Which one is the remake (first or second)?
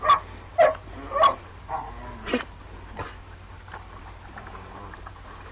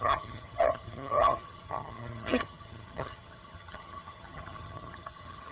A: second